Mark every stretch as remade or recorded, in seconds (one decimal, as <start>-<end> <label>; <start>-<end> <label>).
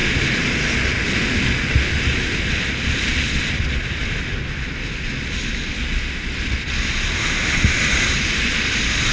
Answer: 0.0-0.7 remade; 0.7-9.1 recorded